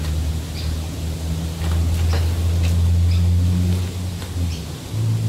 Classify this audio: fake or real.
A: real